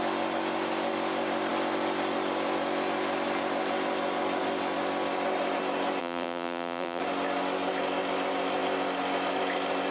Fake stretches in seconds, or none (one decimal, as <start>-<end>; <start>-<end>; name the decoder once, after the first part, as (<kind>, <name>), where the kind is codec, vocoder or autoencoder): 6.0-7.0 (vocoder, BigVGAN v2)